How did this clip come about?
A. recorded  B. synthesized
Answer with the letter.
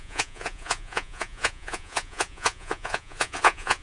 B